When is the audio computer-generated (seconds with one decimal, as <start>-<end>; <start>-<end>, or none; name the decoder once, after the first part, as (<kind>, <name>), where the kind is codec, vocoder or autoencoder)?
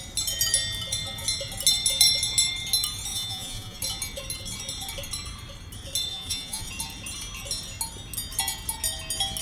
3.1-3.8 (vocoder, Vocos); 6.1-6.7